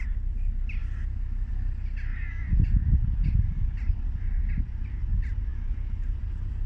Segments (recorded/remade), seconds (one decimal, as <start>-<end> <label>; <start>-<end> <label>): 0.0-6.7 recorded